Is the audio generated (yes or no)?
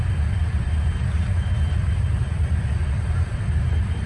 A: yes